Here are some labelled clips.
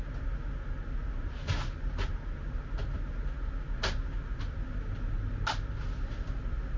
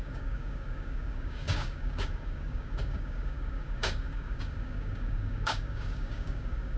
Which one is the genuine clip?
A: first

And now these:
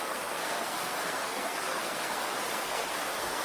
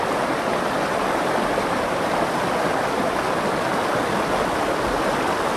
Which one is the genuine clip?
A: second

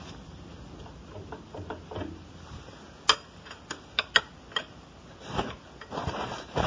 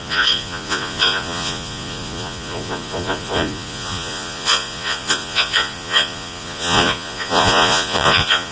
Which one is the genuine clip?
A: first